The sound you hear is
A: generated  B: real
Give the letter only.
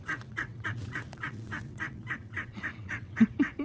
A